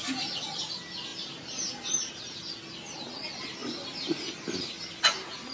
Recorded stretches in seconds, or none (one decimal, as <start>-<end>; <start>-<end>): 0.0-5.5